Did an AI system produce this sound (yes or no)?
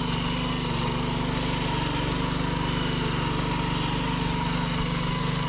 no